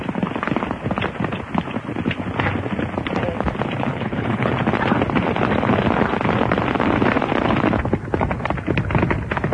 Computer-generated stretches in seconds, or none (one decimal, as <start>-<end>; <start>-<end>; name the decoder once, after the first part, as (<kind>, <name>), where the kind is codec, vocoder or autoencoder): 3.9-4.5 (codec, HILCodec)